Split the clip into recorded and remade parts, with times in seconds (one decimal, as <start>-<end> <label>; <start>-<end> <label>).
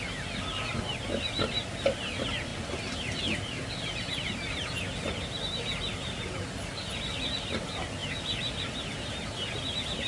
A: 0.0-10.1 recorded